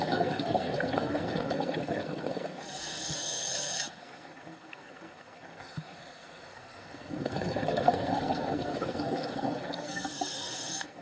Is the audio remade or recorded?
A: remade